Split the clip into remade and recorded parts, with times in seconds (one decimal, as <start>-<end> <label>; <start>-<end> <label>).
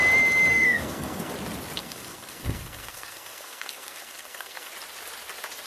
0.0-0.5 recorded; 0.5-1.3 remade; 1.3-1.8 recorded; 1.8-4.7 remade; 4.7-5.7 recorded